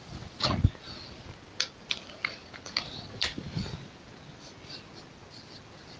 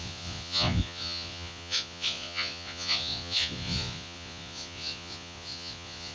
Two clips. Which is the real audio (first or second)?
first